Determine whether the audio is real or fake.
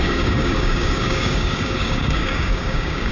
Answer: fake